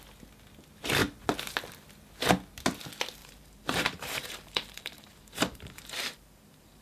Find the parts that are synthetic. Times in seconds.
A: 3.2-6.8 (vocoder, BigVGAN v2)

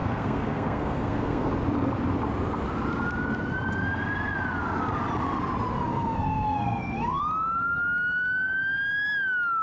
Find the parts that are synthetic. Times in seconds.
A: 0.0-1.5 (codec, SNAC); 5.9-7.2

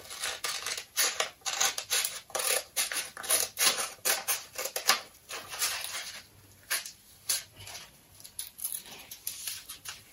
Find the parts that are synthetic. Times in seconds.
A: 0.0-5.2 (vocoder, BigVGAN v2); 6.7-10.1